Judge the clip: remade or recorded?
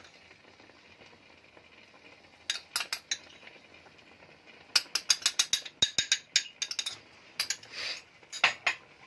recorded